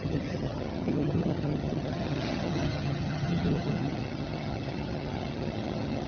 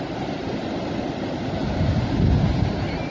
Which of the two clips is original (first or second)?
second